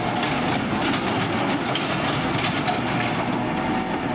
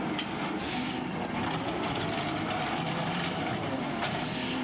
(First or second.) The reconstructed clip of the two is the second